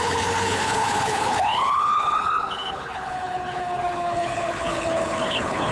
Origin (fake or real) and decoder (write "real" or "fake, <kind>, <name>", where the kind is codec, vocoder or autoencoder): fake, codec, HILCodec